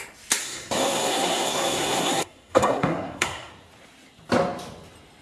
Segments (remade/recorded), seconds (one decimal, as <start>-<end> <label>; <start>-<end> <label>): 0.0-0.4 recorded; 0.4-3.5 remade; 3.5-5.2 recorded

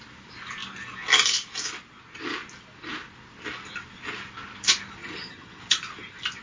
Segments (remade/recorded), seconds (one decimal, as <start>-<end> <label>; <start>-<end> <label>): 0.0-5.0 recorded; 5.0-5.6 remade; 5.6-6.4 recorded

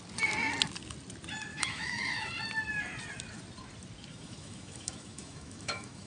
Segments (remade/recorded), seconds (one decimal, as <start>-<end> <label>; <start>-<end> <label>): 0.0-1.5 recorded; 1.5-2.3 remade; 2.3-4.1 recorded; 4.1-6.1 remade

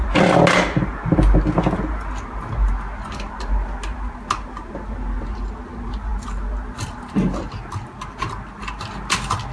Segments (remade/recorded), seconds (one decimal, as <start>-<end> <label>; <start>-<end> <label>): 0.0-9.5 recorded